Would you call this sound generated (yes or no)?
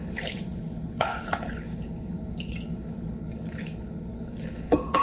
yes